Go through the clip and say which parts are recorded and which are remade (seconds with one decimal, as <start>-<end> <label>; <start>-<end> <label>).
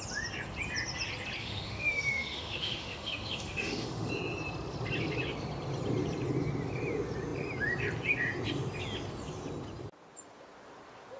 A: 0.0-1.4 recorded; 1.4-4.1 remade; 4.1-11.2 recorded